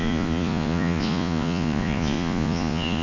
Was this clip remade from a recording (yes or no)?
yes